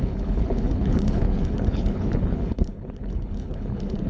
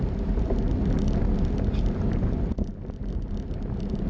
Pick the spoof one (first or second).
first